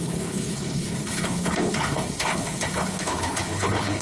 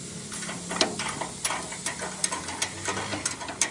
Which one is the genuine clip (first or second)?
second